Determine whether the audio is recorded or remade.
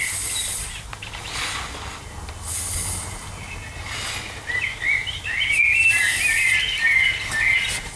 recorded